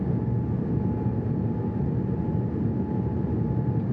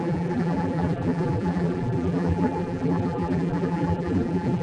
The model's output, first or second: second